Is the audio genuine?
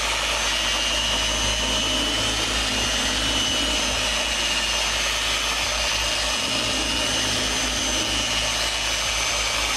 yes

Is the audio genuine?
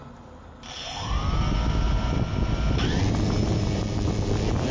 yes